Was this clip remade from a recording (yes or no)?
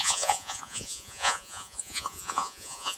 yes